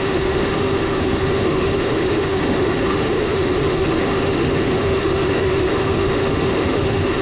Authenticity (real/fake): fake